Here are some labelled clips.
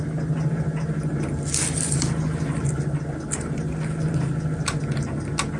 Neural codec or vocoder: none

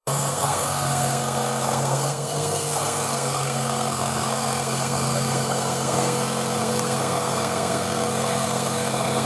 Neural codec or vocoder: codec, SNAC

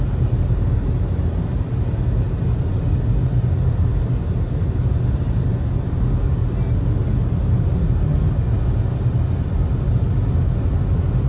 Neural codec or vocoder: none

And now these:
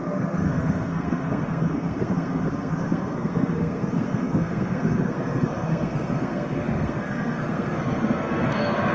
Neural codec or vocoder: codec, SNAC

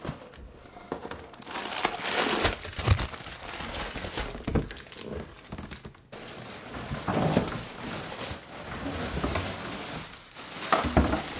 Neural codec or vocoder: none